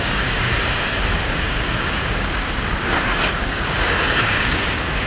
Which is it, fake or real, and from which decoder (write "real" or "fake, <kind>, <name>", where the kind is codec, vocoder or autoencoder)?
fake, codec, DAC